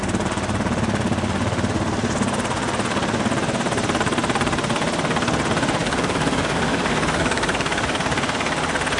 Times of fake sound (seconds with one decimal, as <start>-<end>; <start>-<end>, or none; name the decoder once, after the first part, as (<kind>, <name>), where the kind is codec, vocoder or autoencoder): 5.8-8.0 (codec, DAC)